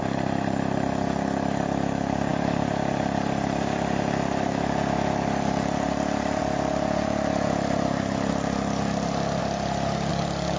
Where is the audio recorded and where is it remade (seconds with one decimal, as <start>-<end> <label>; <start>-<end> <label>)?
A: 0.0-10.6 recorded